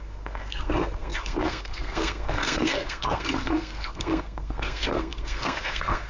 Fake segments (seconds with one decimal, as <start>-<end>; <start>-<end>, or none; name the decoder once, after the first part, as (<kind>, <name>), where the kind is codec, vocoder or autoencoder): 0.0-6.1 (codec, SNAC)